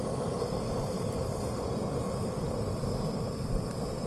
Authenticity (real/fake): real